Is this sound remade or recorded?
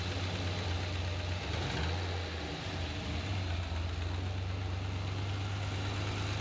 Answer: recorded